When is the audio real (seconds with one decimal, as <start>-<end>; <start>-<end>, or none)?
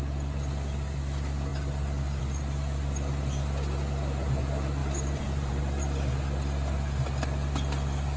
0.0-4.8; 5.6-8.2